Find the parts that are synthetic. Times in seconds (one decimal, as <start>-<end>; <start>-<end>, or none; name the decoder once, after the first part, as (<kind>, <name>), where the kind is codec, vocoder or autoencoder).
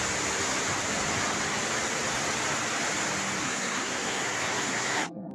3.4-5.3 (codec, SNAC)